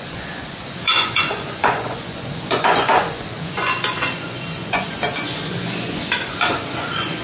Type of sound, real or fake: fake